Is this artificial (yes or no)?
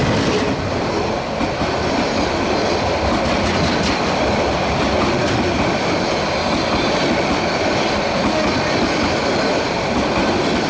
no